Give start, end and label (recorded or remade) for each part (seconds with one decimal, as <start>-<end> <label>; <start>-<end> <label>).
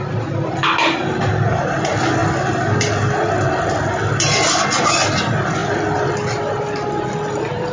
0.0-7.7 recorded